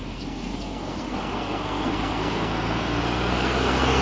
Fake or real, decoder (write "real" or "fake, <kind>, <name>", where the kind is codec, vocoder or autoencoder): fake, codec, SNAC